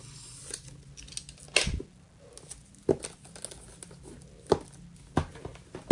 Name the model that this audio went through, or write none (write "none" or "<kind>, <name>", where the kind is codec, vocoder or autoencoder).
none